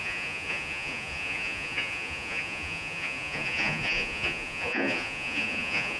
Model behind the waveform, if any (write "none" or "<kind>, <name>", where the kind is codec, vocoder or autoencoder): vocoder, Vocos